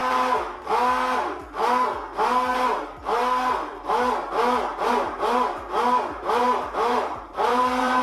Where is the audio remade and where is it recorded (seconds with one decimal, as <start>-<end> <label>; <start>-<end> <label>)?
0.0-4.8 recorded; 4.8-8.0 remade